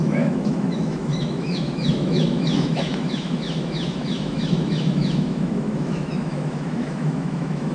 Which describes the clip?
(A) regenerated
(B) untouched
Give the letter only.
A